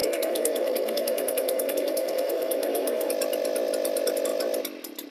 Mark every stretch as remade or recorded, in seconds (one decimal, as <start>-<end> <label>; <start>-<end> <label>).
0.0-3.1 remade; 3.1-5.1 recorded